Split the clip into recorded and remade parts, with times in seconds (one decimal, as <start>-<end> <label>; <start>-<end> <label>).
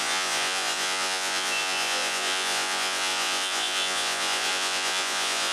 0.0-5.5 remade